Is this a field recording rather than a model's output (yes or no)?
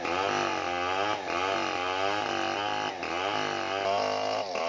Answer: yes